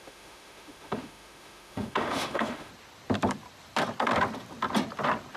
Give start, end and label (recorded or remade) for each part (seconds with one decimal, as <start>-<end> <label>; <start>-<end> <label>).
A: 0.0-2.7 remade; 2.7-5.4 recorded